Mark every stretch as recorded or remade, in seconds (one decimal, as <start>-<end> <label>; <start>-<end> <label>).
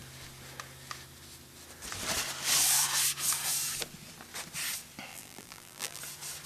0.0-5.1 recorded; 5.1-6.0 remade; 6.0-6.5 recorded